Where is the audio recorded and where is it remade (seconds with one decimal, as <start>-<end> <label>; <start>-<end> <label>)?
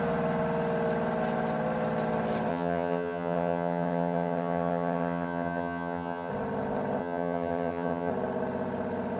0.0-2.5 recorded; 2.5-6.3 remade; 6.3-7.0 recorded; 7.0-8.1 remade; 8.1-9.2 recorded